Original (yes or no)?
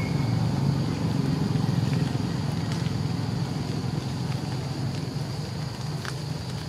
yes